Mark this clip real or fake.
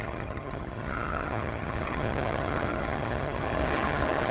fake